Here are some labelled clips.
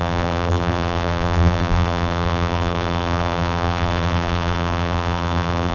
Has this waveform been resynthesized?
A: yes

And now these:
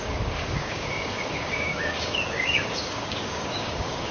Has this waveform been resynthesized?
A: yes